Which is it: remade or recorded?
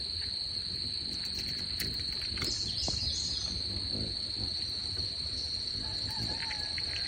remade